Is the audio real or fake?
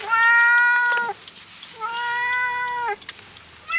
real